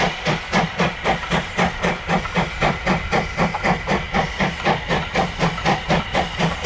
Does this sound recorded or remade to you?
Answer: remade